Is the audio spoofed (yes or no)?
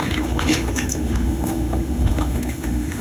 yes